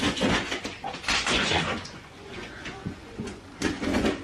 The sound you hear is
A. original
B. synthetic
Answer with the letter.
B